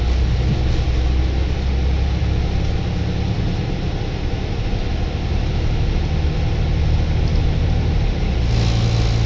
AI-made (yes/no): no